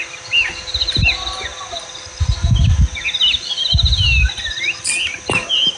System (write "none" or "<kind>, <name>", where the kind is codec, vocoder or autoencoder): none